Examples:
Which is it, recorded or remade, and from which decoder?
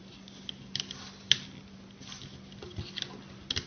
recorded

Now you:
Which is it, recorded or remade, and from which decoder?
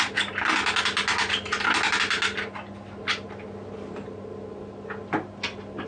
recorded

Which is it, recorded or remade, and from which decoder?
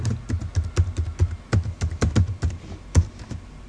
recorded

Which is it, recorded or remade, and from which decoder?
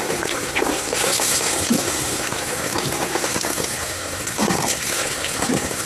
remade, codec, SNAC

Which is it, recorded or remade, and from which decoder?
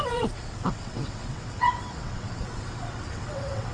remade, vocoder, WaveNeXt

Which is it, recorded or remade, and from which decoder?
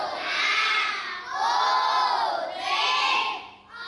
recorded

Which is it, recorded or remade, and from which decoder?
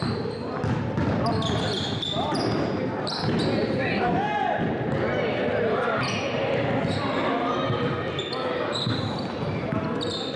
recorded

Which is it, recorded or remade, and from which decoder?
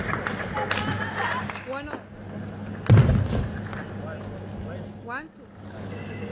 recorded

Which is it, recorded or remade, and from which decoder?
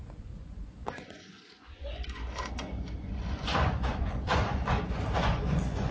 remade, vocoder, Vocos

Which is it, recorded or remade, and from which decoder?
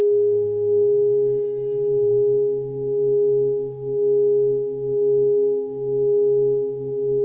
recorded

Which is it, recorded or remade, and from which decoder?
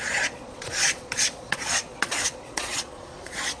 remade, vocoder, Vocos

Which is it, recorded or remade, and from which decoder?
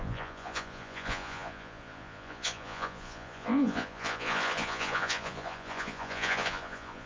remade, vocoder, Vocos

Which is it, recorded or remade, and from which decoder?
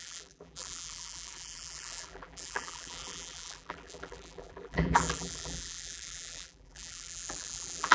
remade, vocoder, BigVGAN v2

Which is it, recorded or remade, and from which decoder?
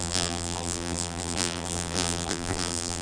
remade, vocoder, BigVGAN v2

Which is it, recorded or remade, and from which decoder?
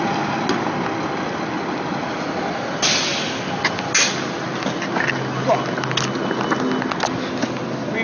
recorded